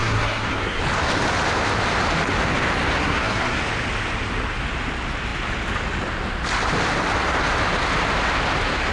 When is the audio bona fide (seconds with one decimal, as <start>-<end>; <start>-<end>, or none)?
0.8-3.0; 3.6-8.9